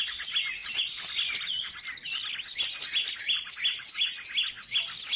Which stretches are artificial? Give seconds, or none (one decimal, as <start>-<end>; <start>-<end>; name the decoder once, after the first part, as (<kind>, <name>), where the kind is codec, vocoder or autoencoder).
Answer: none